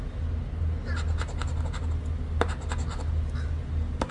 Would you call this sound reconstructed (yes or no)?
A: no